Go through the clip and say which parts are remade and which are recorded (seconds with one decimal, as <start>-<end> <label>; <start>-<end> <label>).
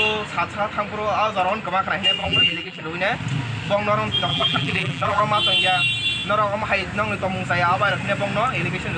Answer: 0.0-2.2 recorded; 2.2-2.8 remade; 2.8-4.3 recorded; 4.3-5.2 remade; 5.2-9.0 recorded